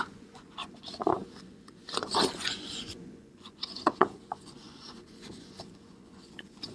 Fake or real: fake